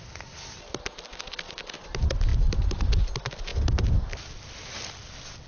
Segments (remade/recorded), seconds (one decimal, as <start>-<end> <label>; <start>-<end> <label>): 0.0-5.5 recorded